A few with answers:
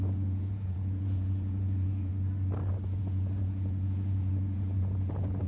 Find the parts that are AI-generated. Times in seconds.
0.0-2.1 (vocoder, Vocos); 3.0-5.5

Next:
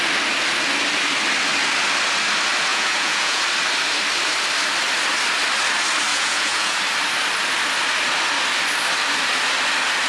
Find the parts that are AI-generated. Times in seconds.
2.7-3.4 (vocoder, Vocos); 6.1-6.8

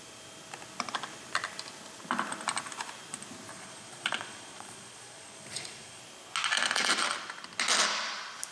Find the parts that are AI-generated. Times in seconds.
3.5-6.0 (vocoder, Vocos)

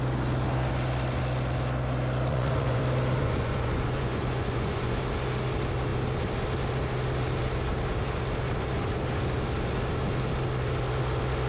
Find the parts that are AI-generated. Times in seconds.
2.3-2.8 (vocoder, Vocos); 3.2-5.0

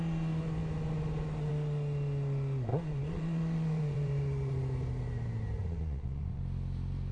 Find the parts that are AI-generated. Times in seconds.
2.7-4.2 (vocoder, Vocos); 5.6-6.4

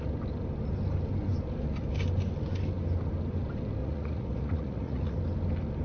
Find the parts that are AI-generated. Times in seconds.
3.8-5.2 (vocoder, Vocos)

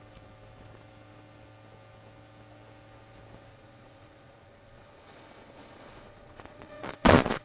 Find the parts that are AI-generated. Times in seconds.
3.5-7.4 (vocoder, Vocos)

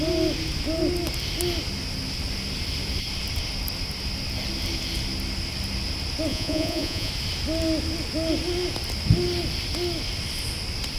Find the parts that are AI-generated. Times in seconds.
6.3-7.1 (vocoder, Vocos)